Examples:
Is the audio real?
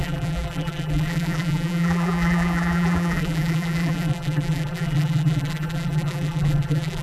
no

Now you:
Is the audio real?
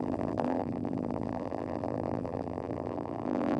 no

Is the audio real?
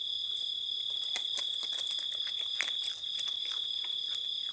no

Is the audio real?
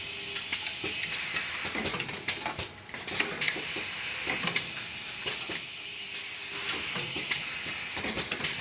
yes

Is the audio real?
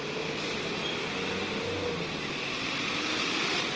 yes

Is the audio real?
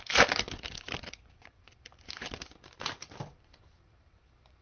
no